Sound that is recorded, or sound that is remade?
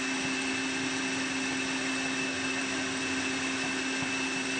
recorded